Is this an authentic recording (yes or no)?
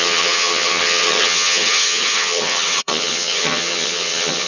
no